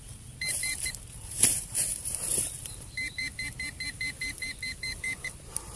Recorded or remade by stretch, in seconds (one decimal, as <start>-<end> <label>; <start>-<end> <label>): 0.0-5.8 remade

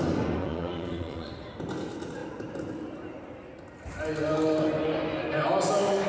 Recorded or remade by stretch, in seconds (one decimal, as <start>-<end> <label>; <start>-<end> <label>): 0.0-0.4 recorded; 0.4-1.3 remade; 1.3-6.1 recorded